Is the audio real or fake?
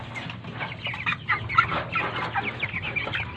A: real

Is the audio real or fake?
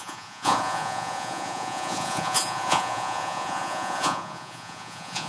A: fake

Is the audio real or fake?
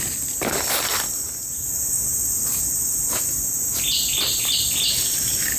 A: real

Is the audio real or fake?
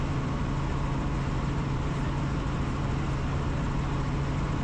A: real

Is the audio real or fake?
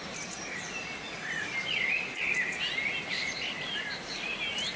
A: real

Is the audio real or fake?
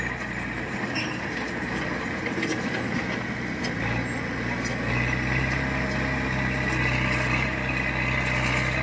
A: real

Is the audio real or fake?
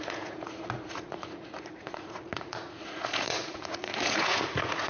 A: fake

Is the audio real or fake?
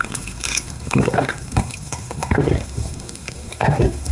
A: fake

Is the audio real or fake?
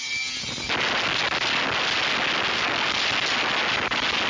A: real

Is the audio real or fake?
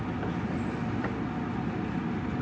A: real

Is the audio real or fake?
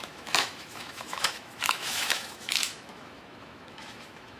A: fake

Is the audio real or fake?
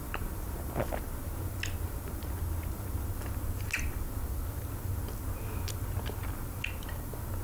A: real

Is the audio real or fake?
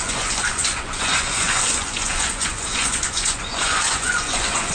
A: fake